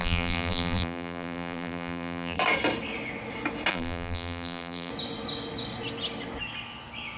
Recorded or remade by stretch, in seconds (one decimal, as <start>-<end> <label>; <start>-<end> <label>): 0.0-2.4 remade; 2.4-3.7 recorded; 3.7-4.9 remade; 4.9-7.2 recorded